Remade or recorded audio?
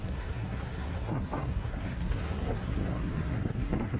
remade